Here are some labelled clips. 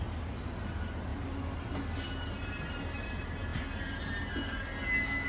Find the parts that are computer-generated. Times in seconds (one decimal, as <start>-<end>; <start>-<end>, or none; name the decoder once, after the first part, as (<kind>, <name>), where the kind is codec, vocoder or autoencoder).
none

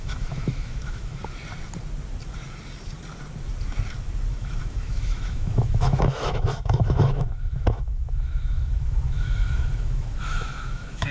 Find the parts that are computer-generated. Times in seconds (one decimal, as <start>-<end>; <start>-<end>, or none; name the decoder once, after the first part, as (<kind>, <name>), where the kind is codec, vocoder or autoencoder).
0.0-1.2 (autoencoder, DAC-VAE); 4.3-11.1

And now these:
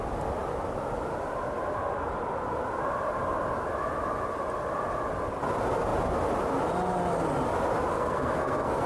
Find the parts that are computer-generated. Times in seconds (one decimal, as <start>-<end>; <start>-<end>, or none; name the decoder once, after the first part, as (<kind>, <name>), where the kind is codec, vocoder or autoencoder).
7.9-8.9 (codec, SNAC)